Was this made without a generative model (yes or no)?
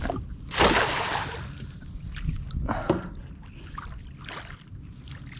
yes